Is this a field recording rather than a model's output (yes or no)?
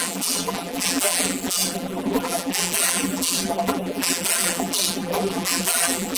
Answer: no